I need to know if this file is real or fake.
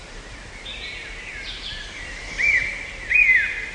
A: fake